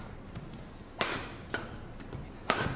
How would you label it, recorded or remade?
recorded